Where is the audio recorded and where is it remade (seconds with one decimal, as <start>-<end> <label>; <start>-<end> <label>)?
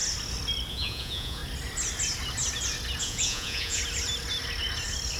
0.0-0.7 recorded; 0.7-1.4 remade; 1.4-3.0 recorded; 3.0-3.8 remade; 3.8-5.2 recorded